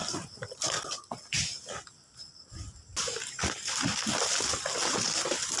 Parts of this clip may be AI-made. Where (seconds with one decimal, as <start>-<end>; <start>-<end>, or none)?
none